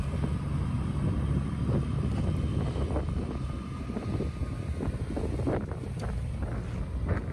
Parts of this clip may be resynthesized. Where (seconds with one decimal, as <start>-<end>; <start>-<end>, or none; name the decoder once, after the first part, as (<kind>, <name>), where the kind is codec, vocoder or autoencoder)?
none